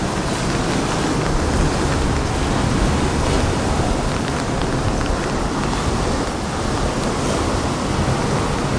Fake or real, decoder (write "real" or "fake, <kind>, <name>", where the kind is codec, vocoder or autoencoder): real